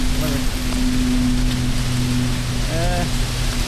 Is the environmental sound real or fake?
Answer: real